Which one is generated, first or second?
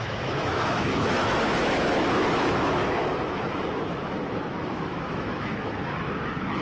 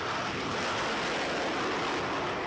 first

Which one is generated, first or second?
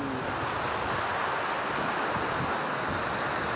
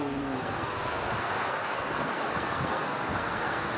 second